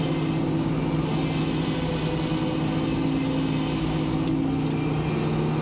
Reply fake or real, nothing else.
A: real